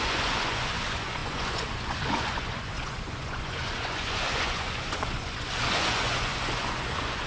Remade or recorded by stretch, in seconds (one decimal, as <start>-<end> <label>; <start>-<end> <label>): 0.0-7.3 remade